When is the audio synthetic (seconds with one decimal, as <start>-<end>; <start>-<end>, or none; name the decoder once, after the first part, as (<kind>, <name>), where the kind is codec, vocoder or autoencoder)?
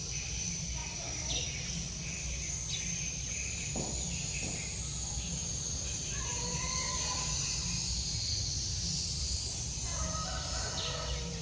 none